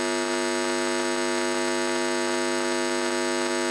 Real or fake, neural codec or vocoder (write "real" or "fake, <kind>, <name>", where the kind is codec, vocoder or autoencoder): real